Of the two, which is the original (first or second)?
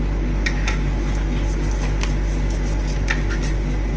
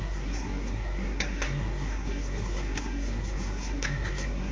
first